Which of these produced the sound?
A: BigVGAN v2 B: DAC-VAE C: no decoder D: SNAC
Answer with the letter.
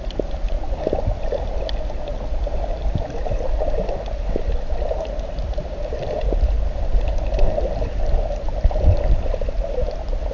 C